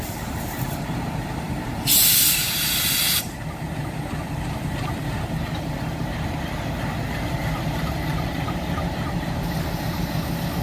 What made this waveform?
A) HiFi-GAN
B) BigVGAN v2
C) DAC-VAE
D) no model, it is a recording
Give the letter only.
B